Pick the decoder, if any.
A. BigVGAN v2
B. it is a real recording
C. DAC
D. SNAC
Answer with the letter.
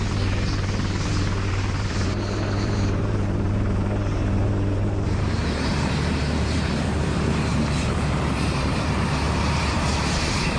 A